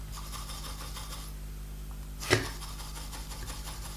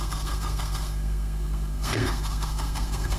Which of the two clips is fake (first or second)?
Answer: second